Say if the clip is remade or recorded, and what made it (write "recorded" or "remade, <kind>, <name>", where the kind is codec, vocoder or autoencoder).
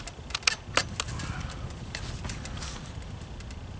recorded